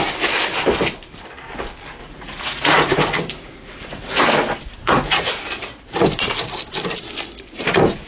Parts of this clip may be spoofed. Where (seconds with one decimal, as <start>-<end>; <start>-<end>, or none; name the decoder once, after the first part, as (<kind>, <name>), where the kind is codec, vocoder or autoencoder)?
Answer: 2.0-4.2 (vocoder, Vocos); 4.7-5.3